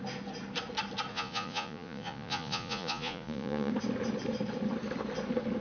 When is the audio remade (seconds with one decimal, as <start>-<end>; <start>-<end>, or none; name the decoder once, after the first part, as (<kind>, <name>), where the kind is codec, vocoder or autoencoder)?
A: 1.1-3.7 (vocoder, Vocos)